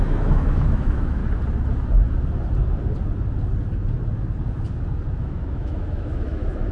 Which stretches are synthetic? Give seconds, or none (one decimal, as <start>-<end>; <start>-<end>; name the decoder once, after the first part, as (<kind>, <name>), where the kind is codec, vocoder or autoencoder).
0.0-1.2 (autoencoder, DAC-VAE); 5.2-6.7